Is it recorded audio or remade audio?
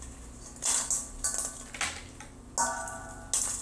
recorded